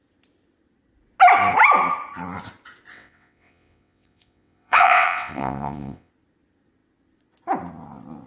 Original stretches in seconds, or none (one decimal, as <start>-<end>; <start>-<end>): 0.0-2.9; 6.1-8.3